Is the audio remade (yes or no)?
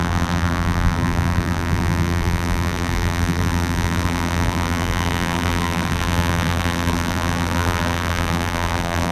yes